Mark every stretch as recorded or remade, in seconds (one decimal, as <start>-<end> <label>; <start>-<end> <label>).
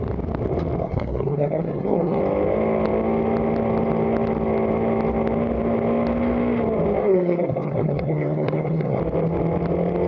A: 0.0-0.8 recorded; 0.8-2.2 remade; 2.2-7.0 recorded; 7.0-9.0 remade; 9.0-10.1 recorded